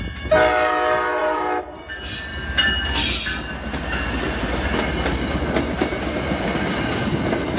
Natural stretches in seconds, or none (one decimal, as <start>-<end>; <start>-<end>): 0.0-1.2; 1.9-7.6